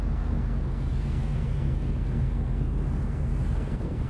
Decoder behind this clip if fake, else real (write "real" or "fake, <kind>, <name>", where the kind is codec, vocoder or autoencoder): fake, codec, SNAC